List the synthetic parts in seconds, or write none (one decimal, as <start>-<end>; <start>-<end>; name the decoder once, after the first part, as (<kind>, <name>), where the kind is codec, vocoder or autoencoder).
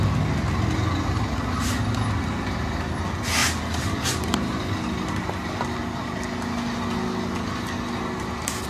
3.4-5.2 (vocoder, BigVGAN v2)